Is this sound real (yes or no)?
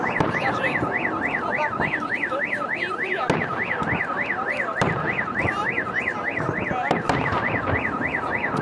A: yes